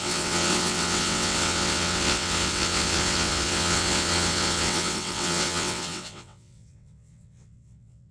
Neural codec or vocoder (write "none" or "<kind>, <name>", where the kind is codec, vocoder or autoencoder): vocoder, WaveNeXt